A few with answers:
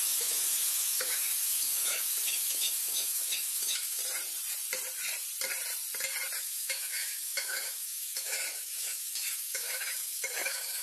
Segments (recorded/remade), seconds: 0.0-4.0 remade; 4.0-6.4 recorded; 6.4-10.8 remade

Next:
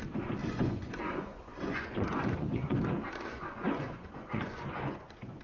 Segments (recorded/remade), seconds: 0.0-0.4 recorded; 0.4-2.8 remade; 2.8-3.3 recorded; 3.3-5.4 remade

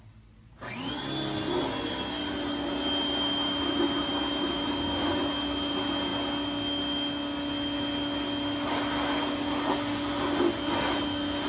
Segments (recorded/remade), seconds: 0.0-11.5 recorded

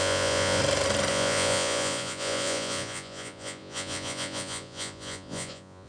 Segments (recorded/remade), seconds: 0.0-0.6 remade; 0.6-1.1 recorded; 1.1-5.9 remade

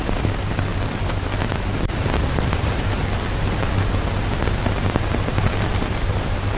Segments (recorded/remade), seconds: 0.0-0.7 remade; 0.7-2.6 recorded; 2.6-3.0 remade; 3.0-5.7 recorded; 5.7-6.6 remade

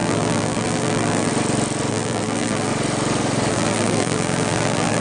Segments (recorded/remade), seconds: 0.0-1.3 remade; 1.3-1.9 recorded; 1.9-2.7 remade; 2.7-3.5 recorded; 3.5-5.0 remade

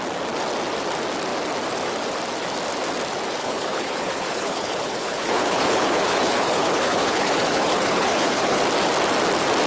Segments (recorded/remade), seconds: 0.0-3.4 recorded; 3.4-8.6 remade; 8.6-9.7 recorded